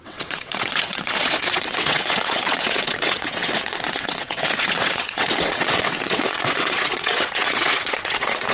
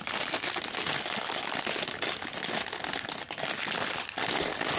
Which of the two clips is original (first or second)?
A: second